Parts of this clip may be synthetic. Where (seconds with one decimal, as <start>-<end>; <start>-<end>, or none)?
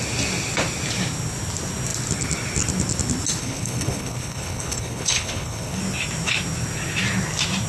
3.4-5.8